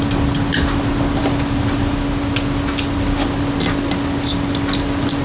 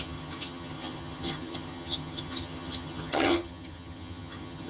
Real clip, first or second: first